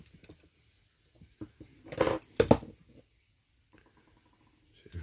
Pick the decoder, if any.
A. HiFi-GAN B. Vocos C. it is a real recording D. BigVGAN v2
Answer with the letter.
C